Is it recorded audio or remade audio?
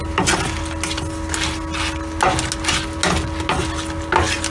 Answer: recorded